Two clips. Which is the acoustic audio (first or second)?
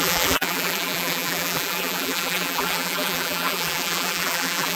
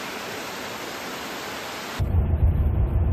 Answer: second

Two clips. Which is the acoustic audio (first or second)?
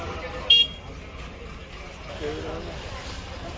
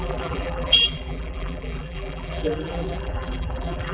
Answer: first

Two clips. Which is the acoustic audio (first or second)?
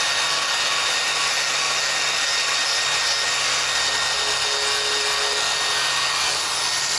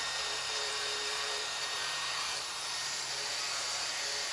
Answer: first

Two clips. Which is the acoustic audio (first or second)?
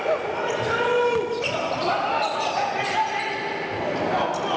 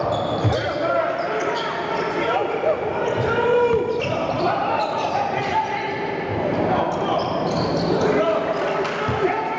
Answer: first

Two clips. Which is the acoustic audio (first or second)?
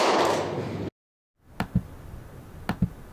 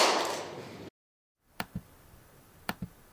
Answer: first